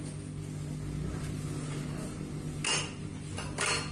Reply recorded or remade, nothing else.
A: recorded